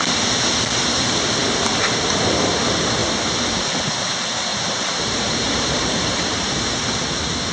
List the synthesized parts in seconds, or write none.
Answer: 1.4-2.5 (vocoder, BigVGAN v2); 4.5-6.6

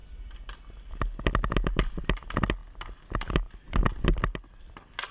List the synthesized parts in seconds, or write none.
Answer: none

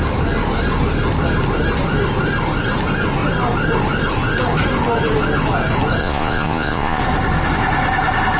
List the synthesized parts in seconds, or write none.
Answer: 6.0-7.0 (vocoder, Vocos)